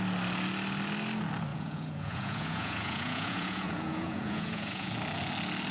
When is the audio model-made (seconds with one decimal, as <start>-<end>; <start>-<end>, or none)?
1.5-4.9